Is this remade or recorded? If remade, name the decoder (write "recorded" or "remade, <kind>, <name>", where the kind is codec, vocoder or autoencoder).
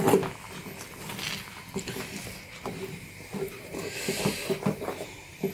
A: recorded